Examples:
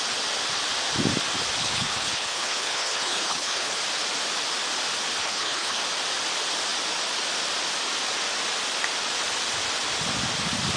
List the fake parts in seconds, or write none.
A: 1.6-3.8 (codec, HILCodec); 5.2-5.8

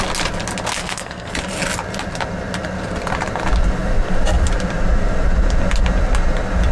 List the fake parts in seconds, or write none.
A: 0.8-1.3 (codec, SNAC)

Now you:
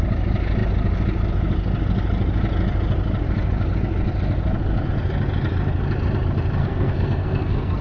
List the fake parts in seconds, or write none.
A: 6.6-7.8 (codec, SNAC)

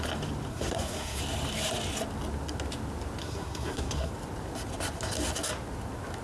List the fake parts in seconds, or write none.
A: 0.5-1.2 (codec, SNAC); 3.2-4.1

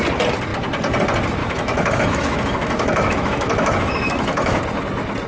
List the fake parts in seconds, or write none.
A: 1.4-4.6 (autoencoder, DAC-VAE)